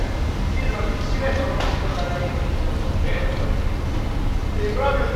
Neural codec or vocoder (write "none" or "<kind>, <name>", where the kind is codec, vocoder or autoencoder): none